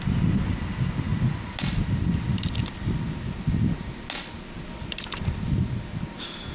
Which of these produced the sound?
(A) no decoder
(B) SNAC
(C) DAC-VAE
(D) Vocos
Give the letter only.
A